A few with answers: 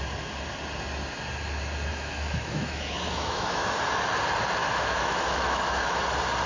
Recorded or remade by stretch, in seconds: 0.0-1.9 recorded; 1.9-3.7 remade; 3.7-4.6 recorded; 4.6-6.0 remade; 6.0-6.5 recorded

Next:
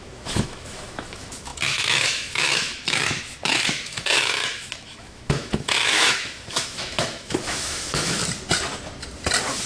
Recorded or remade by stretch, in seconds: 0.0-8.2 remade; 8.2-9.7 recorded

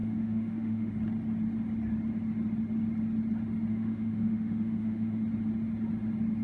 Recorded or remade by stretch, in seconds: 0.0-0.9 remade; 0.9-3.7 recorded; 3.7-5.2 remade; 5.2-6.4 recorded

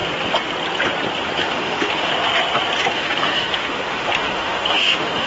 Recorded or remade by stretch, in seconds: 0.0-1.4 recorded; 1.4-2.1 remade; 2.1-2.8 recorded; 2.8-5.3 remade

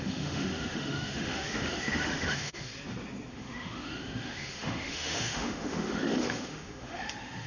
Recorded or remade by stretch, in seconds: 0.0-2.7 remade; 2.7-3.3 recorded; 3.3-7.5 remade

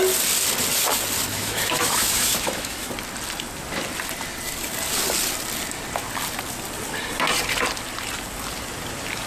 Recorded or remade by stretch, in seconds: 0.0-1.3 recorded; 1.3-2.9 remade; 2.9-9.3 recorded